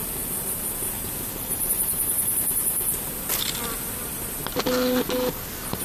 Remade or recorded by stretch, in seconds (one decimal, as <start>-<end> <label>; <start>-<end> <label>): 0.0-3.1 remade; 3.1-5.8 recorded